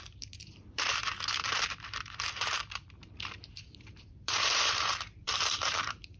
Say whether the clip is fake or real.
fake